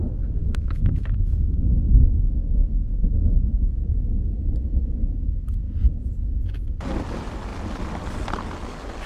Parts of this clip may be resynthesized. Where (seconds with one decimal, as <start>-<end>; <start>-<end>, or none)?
0.4-3.6